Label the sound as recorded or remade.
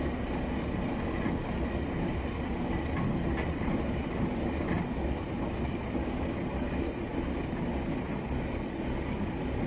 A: recorded